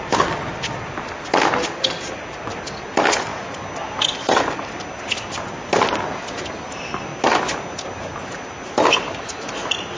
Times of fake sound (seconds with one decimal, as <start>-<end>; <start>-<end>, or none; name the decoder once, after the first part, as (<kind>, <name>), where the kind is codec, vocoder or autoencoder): none

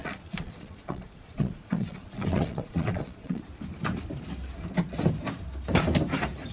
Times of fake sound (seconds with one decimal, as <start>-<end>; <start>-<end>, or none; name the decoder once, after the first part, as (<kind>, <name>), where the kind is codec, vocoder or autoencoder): 0.0-3.4 (vocoder, Vocos)

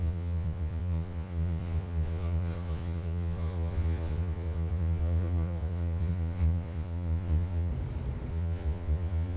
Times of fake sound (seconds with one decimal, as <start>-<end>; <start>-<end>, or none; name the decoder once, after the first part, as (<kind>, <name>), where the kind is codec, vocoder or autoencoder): 0.0-7.7 (vocoder, Vocos); 8.3-9.4

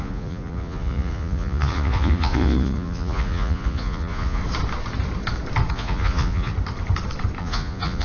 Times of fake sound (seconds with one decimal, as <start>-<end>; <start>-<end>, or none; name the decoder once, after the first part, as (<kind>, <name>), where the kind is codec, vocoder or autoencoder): 0.0-4.4 (vocoder, Vocos); 5.7-6.5; 7.4-8.0

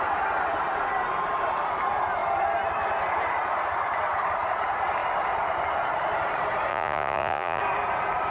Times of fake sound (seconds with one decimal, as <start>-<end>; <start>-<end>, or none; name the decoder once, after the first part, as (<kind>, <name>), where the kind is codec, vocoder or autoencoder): 6.7-7.6 (vocoder, Vocos)

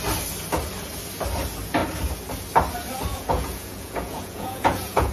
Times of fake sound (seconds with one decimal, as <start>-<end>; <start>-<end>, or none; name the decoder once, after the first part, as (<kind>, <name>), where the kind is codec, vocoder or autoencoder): 3.1-5.1 (vocoder, Vocos)